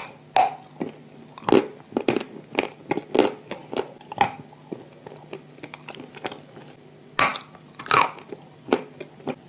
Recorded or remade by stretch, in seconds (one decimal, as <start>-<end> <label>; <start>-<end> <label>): 0.0-9.5 recorded